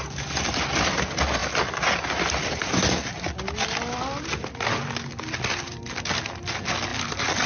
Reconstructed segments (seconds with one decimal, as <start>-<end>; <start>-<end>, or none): none